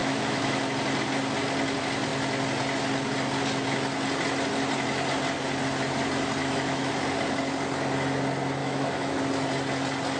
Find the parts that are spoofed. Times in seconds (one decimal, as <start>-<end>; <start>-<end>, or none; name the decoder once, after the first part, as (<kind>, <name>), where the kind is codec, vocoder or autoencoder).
0.0-0.6 (autoencoder, DAC-VAE); 6.4-6.9; 8.6-9.2

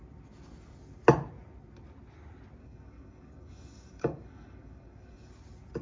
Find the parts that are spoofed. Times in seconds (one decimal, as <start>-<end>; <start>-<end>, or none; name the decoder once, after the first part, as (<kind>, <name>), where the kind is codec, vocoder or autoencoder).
2.6-5.3 (codec, DAC)

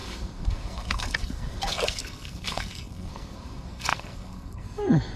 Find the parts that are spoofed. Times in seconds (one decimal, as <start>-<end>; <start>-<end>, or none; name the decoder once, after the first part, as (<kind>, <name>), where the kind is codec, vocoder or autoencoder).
0.0-5.2 (codec, SNAC)

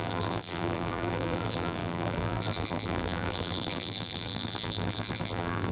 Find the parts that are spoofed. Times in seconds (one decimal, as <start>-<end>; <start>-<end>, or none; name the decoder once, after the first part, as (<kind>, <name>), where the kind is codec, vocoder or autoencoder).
0.0-5.7 (vocoder, BigVGAN v2)

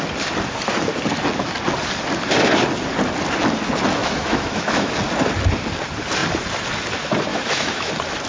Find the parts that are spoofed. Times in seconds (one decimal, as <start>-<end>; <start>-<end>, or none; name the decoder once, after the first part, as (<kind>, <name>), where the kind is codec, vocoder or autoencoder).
4.0-4.9 (autoencoder, DAC-VAE); 7.3-7.9

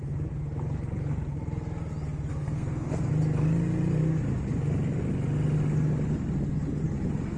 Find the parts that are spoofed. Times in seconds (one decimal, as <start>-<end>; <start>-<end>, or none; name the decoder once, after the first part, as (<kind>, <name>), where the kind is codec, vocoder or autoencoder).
2.3-3.1 (codec, SNAC)

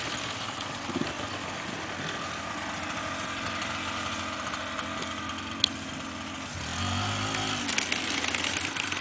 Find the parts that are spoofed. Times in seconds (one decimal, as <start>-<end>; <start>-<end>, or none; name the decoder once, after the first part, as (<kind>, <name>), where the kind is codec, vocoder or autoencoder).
none

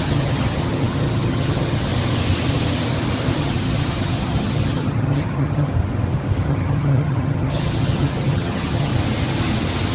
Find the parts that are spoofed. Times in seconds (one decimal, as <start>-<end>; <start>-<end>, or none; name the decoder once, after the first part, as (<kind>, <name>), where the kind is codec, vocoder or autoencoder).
0.0-1.9 (vocoder, HiFi-GAN); 3.4-5.7; 6.4-8.9